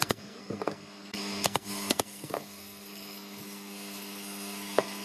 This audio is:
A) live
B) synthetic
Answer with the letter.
B